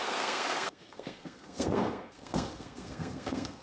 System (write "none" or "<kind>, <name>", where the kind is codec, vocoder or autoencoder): codec, SNAC